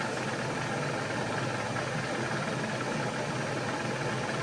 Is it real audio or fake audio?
real